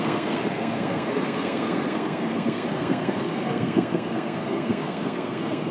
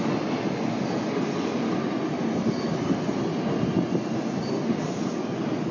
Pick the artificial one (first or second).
first